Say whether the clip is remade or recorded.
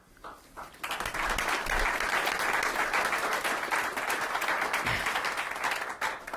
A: recorded